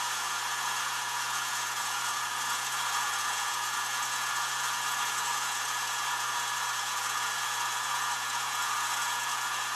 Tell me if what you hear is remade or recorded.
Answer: remade